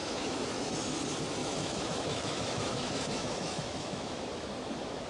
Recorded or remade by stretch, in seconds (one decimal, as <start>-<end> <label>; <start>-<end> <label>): 0.0-0.7 remade; 0.7-1.4 recorded; 1.4-4.5 remade; 4.5-5.1 recorded